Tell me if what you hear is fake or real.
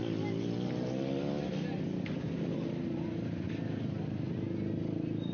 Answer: real